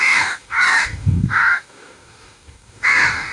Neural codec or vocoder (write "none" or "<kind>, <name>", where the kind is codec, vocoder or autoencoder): codec, DAC